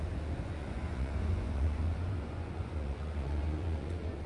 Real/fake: fake